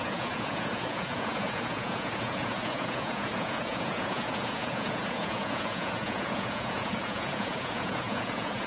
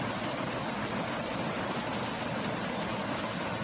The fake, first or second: first